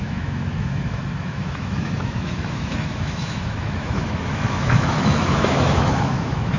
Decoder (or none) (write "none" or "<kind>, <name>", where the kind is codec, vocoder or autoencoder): autoencoder, DAC-VAE